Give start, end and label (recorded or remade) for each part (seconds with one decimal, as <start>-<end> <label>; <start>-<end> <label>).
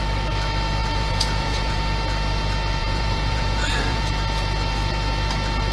0.0-0.8 recorded; 0.8-1.8 remade; 1.8-2.8 recorded; 2.8-4.1 remade; 4.1-5.7 recorded